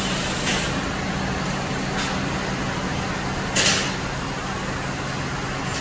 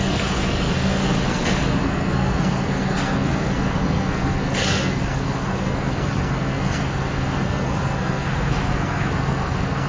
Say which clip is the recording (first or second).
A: first